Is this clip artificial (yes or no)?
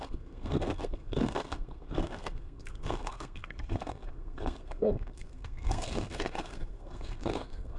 yes